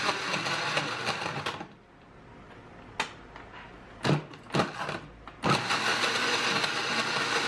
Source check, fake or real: real